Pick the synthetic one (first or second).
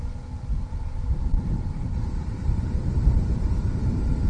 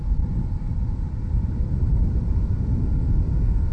first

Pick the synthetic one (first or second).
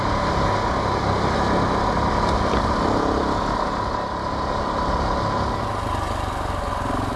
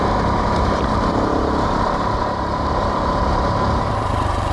second